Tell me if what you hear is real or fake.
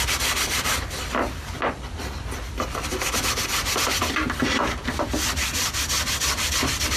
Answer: real